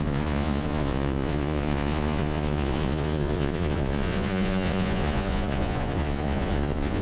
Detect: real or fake fake